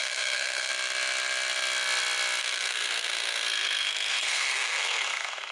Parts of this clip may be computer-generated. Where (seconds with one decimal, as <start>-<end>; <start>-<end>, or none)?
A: 0.0-0.7; 2.4-5.5